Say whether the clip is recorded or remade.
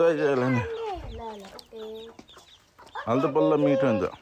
recorded